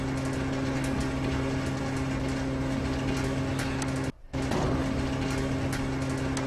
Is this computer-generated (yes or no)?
no